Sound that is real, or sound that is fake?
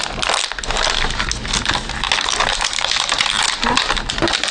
real